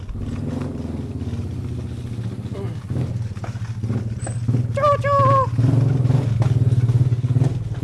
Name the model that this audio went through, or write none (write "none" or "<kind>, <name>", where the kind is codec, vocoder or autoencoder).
none